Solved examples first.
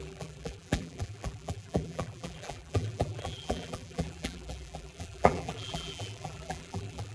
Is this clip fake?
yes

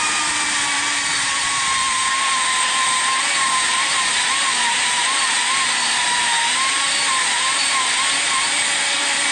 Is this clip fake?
yes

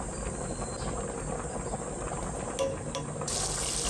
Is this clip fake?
no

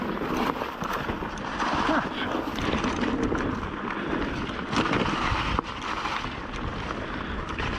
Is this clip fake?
no